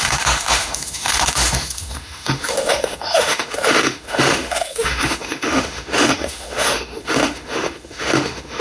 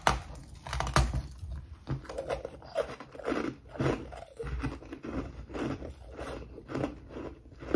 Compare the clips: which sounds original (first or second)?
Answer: second